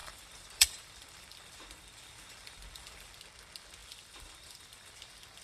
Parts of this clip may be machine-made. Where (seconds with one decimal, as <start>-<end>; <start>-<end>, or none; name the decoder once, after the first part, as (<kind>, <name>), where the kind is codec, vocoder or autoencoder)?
0.0-3.2 (vocoder, BigVGAN v2); 3.8-5.0

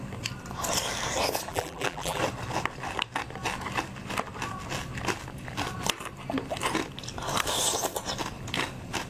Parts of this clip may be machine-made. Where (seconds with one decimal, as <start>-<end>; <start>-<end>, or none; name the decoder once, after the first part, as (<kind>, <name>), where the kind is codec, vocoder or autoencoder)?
1.5-2.2 (vocoder, BigVGAN v2)

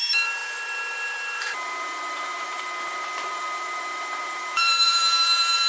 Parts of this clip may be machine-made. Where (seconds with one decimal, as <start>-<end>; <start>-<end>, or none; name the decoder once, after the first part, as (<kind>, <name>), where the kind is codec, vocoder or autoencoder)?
0.0-5.7 (vocoder, BigVGAN v2)

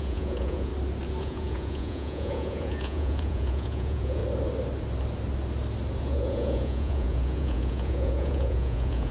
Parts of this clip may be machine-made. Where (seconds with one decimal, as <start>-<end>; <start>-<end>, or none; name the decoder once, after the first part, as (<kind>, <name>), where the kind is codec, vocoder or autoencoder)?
0.0-0.7 (vocoder, Vocos); 1.2-4.2; 6.0-9.1

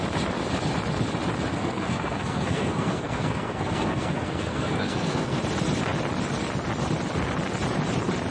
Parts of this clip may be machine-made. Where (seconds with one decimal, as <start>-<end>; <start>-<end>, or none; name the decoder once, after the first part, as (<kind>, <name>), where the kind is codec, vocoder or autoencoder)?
1.5-5.4 (codec, SNAC)